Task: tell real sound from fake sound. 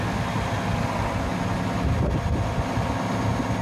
real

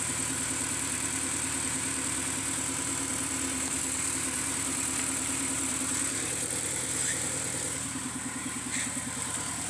fake